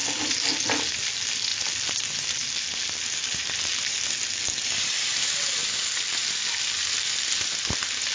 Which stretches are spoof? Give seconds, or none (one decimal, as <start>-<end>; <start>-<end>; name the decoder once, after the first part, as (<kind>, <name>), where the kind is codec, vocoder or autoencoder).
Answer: none